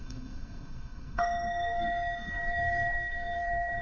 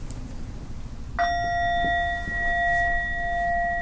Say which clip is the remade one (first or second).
first